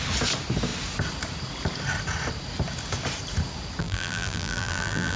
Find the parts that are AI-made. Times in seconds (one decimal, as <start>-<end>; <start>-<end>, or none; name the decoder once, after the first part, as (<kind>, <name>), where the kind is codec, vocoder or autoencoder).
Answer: 3.8-5.2 (vocoder, BigVGAN v2)